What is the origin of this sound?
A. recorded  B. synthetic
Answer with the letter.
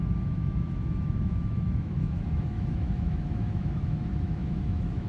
B